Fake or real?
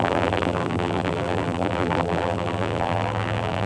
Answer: fake